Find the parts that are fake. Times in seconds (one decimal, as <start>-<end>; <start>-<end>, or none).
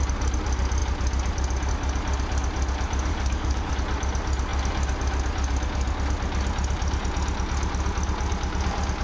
3.1-3.7